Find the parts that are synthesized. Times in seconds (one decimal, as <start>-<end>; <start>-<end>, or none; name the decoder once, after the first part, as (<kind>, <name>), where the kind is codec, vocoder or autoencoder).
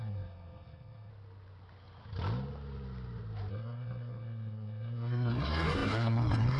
0.0-1.1 (codec, SNAC); 3.5-6.6